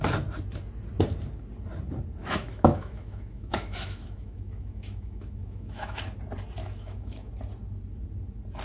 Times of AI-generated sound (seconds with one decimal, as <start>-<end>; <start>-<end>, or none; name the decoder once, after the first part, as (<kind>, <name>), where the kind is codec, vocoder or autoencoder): 2.2-6.0 (autoencoder, DAC-VAE); 6.6-7.3